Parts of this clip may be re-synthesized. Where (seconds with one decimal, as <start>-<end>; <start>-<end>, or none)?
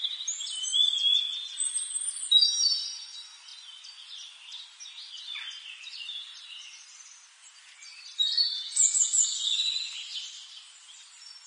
none